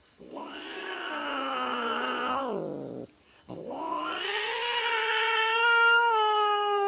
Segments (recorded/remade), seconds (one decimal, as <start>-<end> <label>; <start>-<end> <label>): 0.0-2.4 remade; 2.4-3.2 recorded; 3.2-6.9 remade